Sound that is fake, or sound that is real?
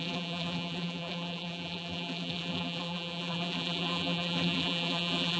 fake